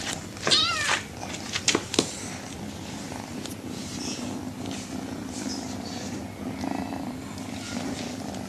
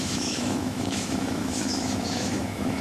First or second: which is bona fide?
first